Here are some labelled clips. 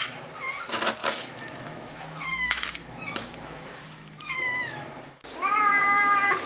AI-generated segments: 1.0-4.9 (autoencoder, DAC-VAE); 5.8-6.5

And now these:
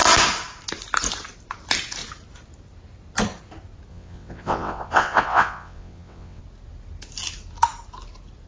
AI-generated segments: 3.9-6.4 (vocoder, WaveNeXt)